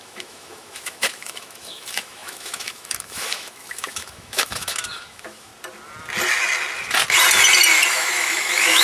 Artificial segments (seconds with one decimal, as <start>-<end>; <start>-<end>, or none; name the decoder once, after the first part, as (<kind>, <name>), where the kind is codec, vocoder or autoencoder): 0.0-5.5 (autoencoder, DAC-VAE); 7.9-8.8